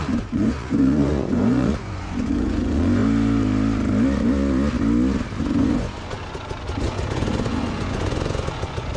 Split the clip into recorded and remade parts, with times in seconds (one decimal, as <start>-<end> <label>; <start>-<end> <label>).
0.0-3.0 remade; 3.0-5.4 recorded; 5.4-9.0 remade

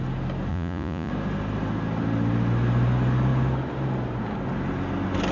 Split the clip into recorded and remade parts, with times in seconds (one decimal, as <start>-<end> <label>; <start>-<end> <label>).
0.0-0.5 recorded; 0.5-1.1 remade; 1.1-5.3 recorded

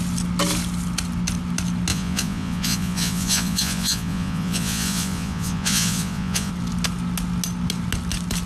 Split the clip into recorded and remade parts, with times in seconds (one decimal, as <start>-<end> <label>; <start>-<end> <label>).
0.0-1.9 recorded; 1.9-6.5 remade; 6.5-8.5 recorded

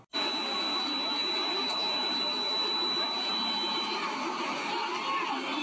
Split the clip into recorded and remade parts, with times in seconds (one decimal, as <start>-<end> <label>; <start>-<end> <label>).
0.0-5.6 recorded